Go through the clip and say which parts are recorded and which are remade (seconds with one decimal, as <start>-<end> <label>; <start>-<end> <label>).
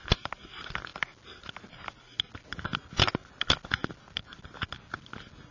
0.0-5.5 recorded